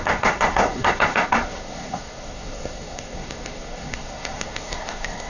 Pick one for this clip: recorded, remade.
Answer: remade